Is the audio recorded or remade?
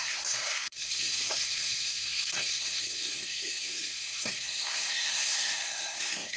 remade